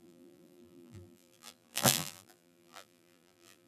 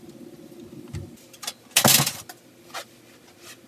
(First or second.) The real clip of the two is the second